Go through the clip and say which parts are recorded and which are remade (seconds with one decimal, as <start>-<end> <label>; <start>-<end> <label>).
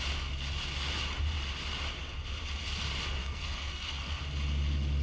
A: 0.0-3.2 recorded; 3.2-4.2 remade; 4.2-5.0 recorded